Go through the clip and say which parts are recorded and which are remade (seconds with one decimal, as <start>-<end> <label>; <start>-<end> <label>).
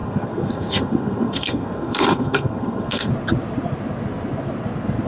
0.0-3.1 remade; 3.1-5.1 recorded